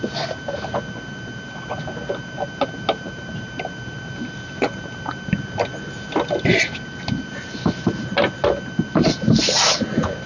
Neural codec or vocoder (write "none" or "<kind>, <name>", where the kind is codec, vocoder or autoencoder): none